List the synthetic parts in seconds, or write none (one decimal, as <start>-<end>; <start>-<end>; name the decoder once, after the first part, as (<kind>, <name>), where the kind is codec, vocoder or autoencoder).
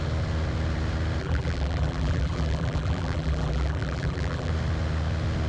1.2-4.5 (vocoder, BigVGAN v2)